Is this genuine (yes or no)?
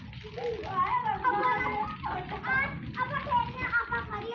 yes